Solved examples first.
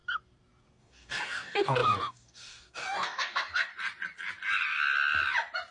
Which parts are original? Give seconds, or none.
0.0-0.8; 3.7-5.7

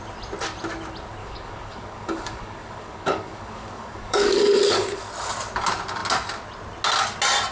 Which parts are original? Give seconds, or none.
0.0-1.2; 5.1-7.5

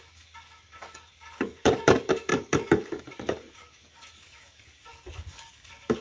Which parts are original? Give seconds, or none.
none

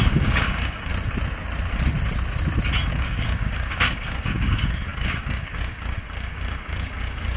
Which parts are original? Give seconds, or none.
0.9-2.9

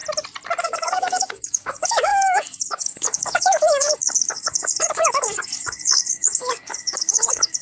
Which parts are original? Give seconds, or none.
0.0-0.6

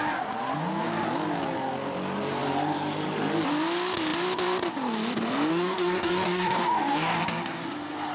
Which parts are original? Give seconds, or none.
0.0-5.5; 7.2-8.1